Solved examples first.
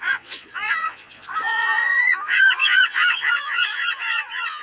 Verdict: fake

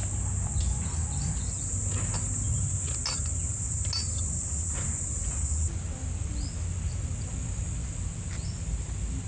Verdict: real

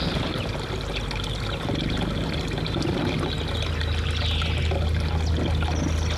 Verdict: real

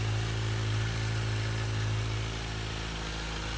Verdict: fake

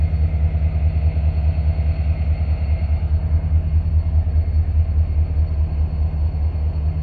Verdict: real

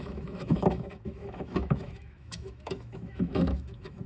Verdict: fake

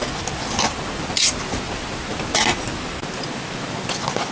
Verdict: real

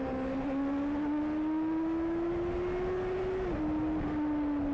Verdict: real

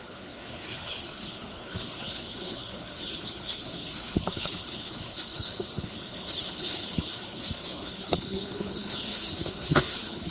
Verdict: fake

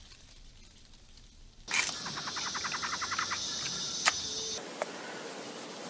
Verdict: real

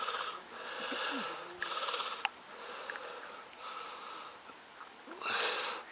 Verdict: real